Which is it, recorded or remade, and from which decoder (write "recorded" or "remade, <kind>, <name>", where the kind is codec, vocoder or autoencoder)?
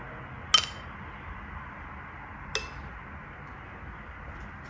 recorded